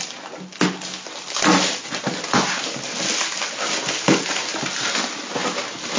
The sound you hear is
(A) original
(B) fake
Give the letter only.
A